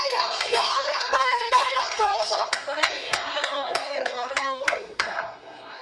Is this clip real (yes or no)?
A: no